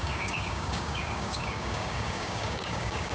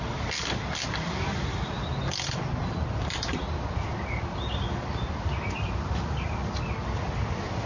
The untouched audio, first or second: second